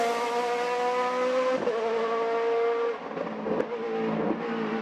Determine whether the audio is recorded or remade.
recorded